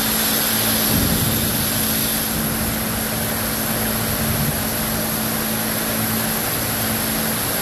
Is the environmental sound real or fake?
real